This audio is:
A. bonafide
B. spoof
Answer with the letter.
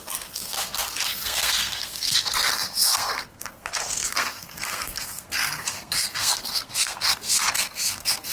B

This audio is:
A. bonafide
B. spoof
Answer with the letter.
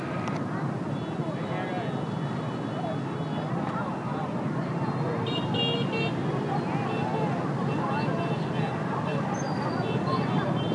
A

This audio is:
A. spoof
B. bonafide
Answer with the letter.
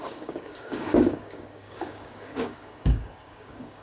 A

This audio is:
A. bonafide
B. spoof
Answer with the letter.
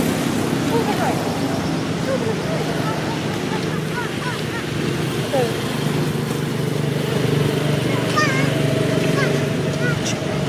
A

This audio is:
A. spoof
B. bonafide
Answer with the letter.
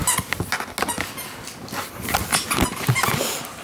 B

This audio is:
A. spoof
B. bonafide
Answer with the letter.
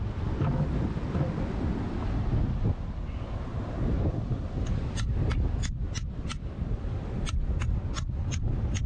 B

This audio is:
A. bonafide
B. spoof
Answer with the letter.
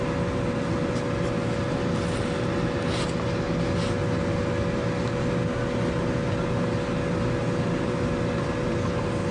A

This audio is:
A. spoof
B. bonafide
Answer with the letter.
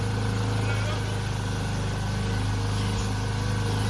B